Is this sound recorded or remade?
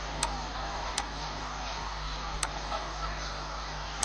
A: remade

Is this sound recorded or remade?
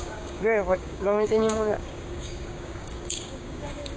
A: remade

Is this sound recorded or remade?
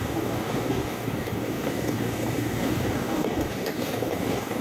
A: remade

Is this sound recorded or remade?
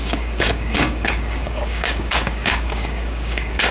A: remade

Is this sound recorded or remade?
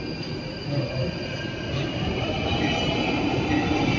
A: recorded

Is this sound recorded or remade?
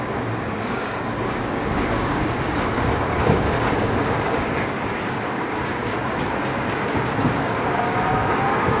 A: remade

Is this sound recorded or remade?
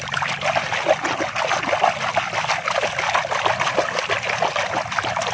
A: recorded